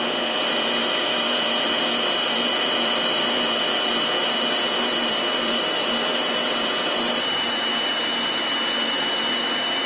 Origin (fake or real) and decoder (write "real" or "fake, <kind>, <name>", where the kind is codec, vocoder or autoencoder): fake, vocoder, BigVGAN v2